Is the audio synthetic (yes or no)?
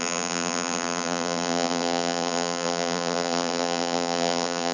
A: yes